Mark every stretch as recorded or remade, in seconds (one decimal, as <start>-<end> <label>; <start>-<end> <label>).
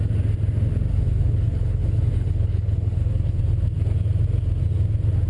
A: 0.0-0.9 recorded; 0.9-3.4 remade; 3.4-5.3 recorded